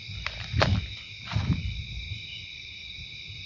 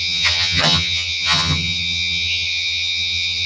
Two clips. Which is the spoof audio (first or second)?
second